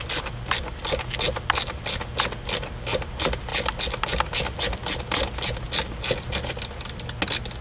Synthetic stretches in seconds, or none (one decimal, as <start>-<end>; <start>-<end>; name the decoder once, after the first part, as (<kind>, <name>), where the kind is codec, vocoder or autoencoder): none